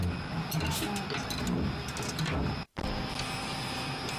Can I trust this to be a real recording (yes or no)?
yes